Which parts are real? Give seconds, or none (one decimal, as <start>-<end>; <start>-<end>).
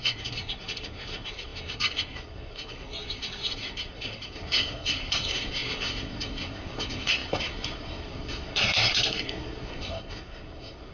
none